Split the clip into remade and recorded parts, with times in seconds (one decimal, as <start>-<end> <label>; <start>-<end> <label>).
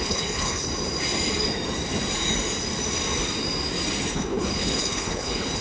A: 0.0-0.7 remade; 0.7-4.1 recorded; 4.1-5.6 remade